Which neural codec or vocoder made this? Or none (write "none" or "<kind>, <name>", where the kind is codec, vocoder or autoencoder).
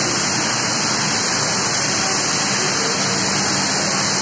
none